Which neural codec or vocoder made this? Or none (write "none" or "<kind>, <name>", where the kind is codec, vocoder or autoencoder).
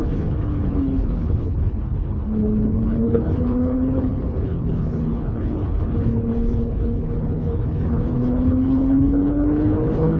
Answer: codec, HILCodec